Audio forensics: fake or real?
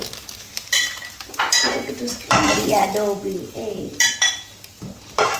real